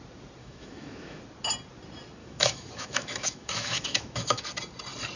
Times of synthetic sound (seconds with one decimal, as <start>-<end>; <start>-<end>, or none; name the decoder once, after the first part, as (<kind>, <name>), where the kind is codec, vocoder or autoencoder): 0.4-1.2 (autoencoder, DAC-VAE); 2.2-4.4